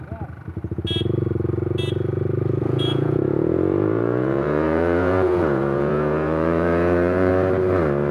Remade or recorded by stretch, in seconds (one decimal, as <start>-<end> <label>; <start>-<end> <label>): 0.0-2.6 recorded; 2.6-7.3 remade; 7.3-8.1 recorded